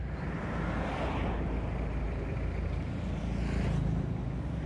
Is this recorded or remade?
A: recorded